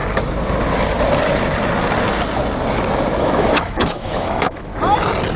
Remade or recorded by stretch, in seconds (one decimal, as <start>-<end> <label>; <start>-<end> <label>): 0.0-3.2 recorded; 3.2-4.7 remade; 4.7-5.4 recorded